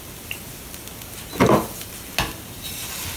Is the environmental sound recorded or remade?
recorded